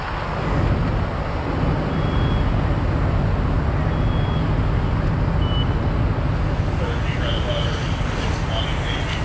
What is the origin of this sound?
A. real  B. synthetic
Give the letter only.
A